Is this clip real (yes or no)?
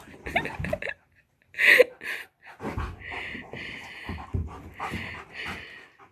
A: yes